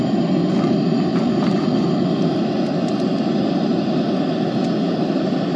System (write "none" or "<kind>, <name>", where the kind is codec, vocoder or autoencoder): none